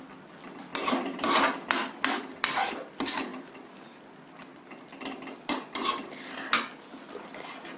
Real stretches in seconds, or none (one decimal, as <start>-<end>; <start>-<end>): 0.7-2.2; 3.3-4.3